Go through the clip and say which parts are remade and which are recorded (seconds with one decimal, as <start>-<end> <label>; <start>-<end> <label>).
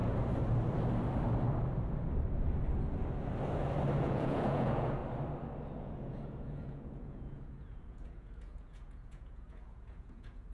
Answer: 0.0-4.0 recorded; 4.0-5.0 remade; 5.0-5.8 recorded; 5.8-10.5 remade